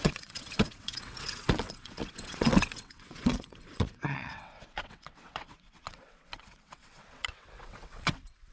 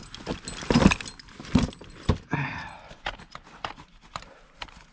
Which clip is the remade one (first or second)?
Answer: first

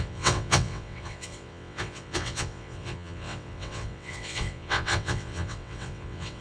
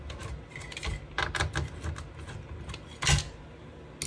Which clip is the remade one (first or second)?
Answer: first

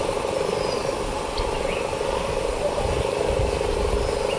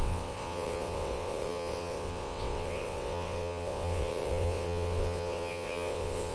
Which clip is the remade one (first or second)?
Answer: second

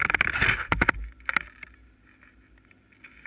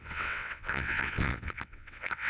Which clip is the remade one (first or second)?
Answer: second